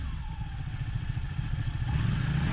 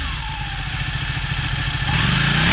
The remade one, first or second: first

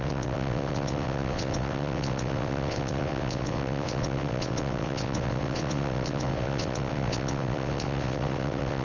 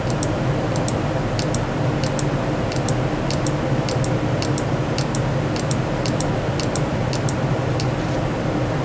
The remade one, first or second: first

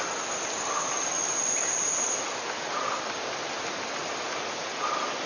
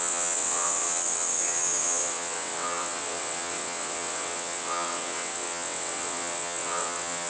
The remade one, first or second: second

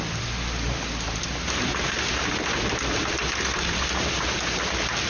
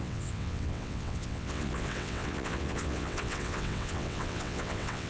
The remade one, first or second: second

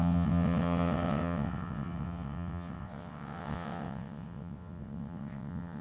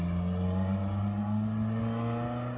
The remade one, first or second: first